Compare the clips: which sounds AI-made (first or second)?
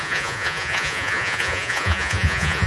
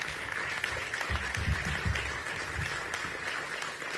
first